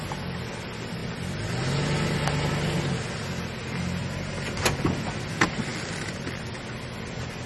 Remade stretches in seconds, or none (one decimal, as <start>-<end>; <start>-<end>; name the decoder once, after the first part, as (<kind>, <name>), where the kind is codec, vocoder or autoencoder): none